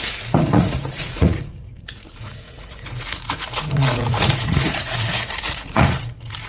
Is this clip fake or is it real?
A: fake